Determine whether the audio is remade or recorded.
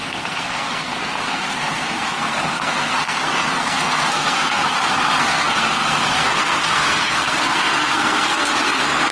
remade